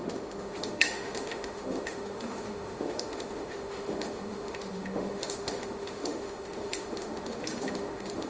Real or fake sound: fake